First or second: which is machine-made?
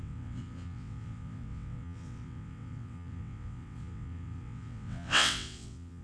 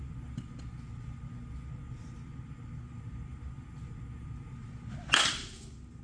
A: first